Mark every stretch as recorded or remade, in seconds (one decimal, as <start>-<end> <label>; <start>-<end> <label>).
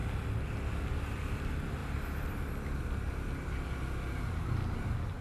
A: 0.0-5.2 recorded